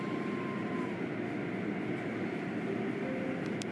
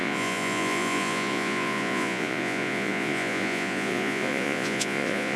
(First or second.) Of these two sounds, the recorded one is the first